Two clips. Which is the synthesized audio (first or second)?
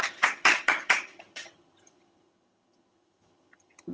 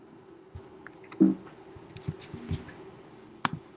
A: first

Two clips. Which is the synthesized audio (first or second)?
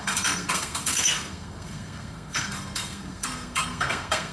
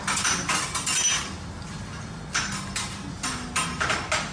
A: first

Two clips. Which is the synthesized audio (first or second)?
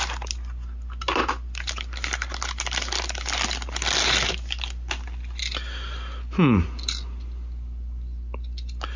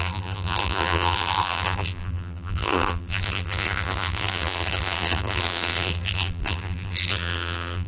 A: second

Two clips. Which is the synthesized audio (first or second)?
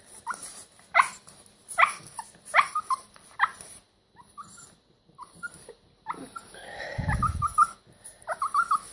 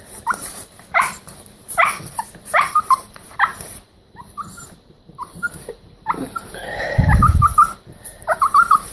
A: second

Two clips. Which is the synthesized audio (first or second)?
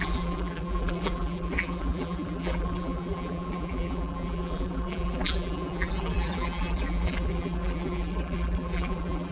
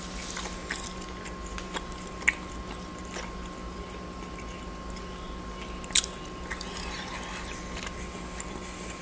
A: first